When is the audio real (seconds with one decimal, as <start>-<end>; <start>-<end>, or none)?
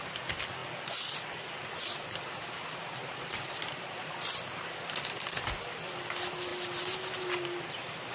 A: 0.0-8.1